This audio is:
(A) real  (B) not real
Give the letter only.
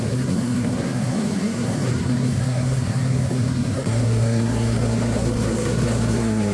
B